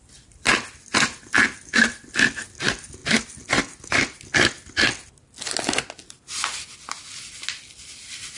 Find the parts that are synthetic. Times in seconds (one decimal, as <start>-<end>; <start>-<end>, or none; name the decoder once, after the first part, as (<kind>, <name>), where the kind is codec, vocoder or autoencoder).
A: none